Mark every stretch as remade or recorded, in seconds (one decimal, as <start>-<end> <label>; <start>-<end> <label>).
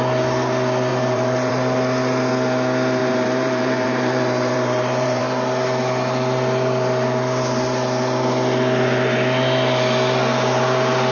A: 0.0-0.9 recorded; 0.9-1.5 remade; 1.5-3.0 recorded; 3.0-5.2 remade; 5.2-11.1 recorded